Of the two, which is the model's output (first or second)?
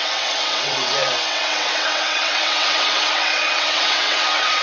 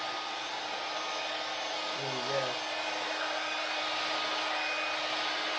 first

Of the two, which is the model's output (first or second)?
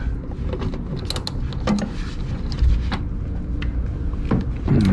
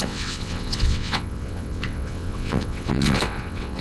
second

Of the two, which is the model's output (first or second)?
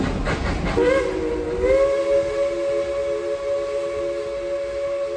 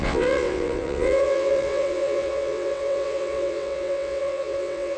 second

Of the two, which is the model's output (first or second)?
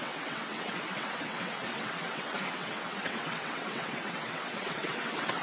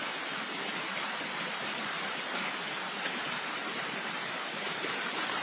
first